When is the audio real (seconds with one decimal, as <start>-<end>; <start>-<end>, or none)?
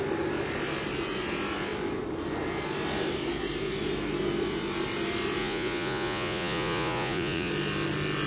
0.0-5.4; 7.5-8.3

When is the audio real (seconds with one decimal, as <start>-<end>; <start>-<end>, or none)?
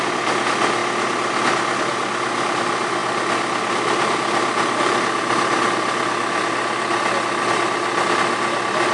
0.0-8.9